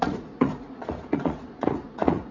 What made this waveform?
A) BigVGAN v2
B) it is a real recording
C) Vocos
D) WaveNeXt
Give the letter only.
C